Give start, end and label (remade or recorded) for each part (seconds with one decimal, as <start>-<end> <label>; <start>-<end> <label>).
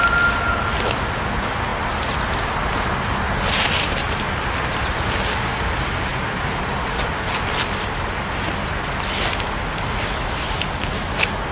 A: 0.0-11.5 recorded